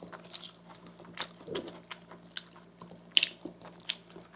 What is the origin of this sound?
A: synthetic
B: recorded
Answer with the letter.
B